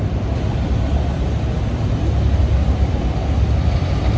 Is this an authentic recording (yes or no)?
yes